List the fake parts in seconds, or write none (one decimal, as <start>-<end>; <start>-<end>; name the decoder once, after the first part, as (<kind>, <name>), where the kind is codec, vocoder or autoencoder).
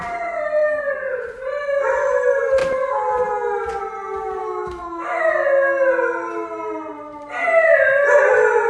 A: 4.4-5.3 (autoencoder, DAC-VAE)